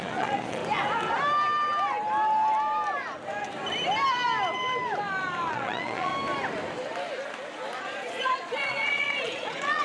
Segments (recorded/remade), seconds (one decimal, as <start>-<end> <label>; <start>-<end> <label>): 0.0-0.6 remade; 0.6-5.5 recorded; 5.5-6.1 remade; 6.1-7.8 recorded; 7.8-9.8 remade